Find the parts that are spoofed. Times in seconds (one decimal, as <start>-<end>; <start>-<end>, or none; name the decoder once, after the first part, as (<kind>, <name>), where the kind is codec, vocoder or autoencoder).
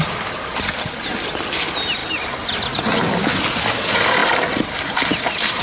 none